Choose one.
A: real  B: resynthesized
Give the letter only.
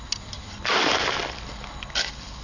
A